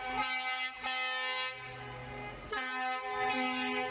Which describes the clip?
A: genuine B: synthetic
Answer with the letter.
A